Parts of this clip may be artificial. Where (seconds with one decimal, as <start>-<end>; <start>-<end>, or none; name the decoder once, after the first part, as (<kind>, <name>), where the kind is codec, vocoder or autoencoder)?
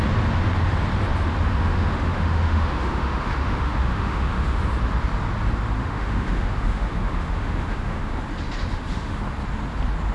1.5-4.6 (autoencoder, DAC-VAE); 5.8-8.2; 8.7-9.2